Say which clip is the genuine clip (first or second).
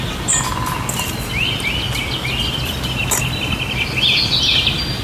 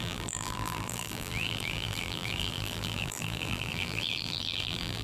first